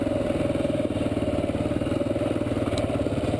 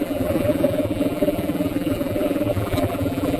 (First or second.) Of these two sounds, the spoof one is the second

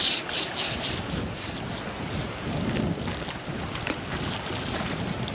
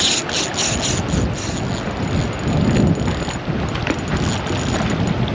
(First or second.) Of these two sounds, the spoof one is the first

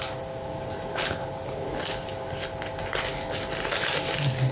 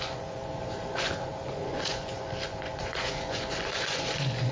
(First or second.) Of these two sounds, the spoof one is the second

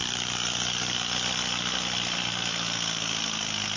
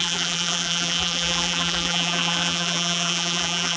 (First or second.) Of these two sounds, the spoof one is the second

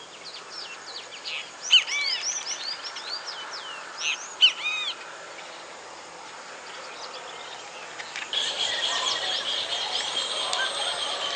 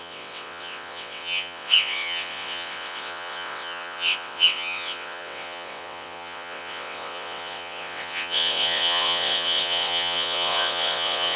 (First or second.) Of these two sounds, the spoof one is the second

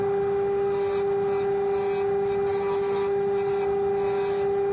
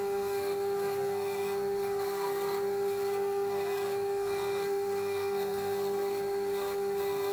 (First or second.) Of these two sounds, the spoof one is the second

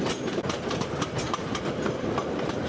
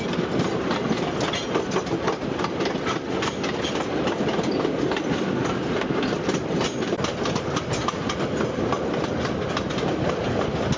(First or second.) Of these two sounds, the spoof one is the first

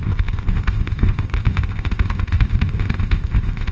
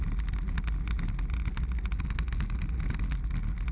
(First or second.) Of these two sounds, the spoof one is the first